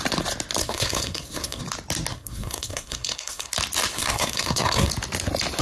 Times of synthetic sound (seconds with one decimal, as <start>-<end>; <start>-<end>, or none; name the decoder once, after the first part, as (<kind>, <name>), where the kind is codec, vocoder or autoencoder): 0.6-1.6 (codec, SNAC); 2.1-3.5; 3.9-4.9